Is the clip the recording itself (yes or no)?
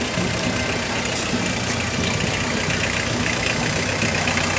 yes